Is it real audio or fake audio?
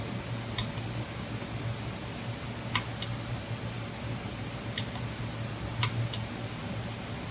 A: real